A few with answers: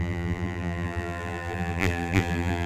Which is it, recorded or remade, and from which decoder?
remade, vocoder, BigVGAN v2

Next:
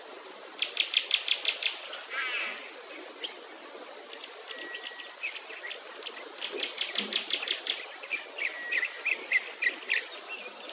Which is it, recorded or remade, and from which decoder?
recorded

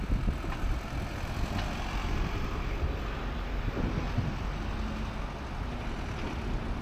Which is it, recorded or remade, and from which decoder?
recorded